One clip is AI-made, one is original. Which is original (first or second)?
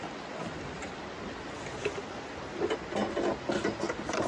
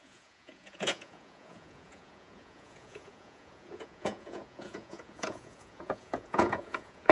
first